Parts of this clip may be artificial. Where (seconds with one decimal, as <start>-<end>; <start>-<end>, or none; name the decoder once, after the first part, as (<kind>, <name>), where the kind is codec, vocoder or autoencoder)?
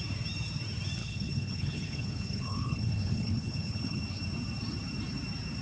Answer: 1.0-4.0 (codec, HILCodec)